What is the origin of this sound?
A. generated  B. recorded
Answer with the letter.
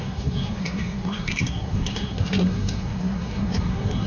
A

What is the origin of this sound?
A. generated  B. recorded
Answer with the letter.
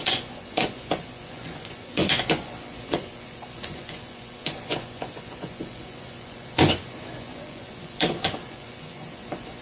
A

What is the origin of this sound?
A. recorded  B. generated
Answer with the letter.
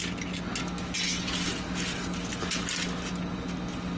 A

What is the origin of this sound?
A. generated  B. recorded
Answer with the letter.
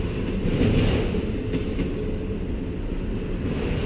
B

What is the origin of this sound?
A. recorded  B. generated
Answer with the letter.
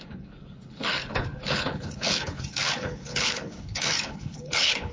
B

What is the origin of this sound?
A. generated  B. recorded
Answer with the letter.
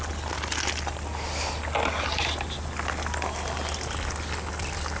B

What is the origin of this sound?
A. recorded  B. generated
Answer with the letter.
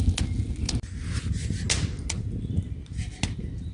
A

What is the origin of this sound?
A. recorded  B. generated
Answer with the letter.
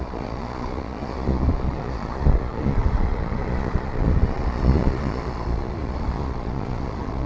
B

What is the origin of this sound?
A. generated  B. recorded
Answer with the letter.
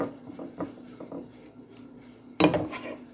B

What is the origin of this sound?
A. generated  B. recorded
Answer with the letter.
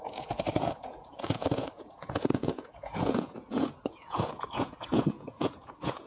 A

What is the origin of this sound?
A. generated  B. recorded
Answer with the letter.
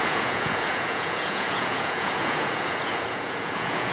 A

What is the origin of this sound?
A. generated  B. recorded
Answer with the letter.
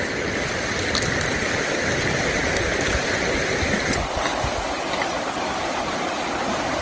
B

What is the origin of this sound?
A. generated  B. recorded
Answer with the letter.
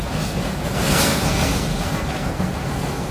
A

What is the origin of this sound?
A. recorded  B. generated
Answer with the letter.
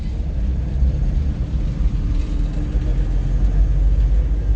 A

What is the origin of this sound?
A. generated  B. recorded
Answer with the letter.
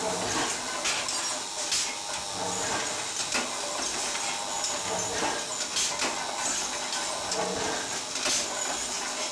B